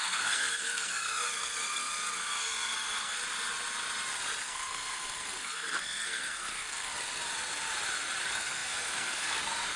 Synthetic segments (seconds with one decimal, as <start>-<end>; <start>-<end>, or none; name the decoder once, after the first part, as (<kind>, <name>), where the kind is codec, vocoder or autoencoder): 0.0-3.2 (codec, SNAC); 4.4-7.2; 8.2-9.8